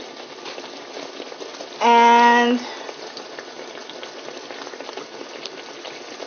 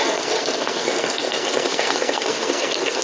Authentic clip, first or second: first